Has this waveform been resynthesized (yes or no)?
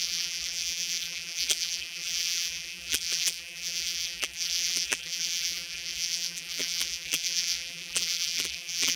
yes